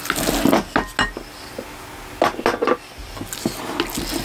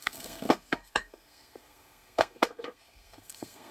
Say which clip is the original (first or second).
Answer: first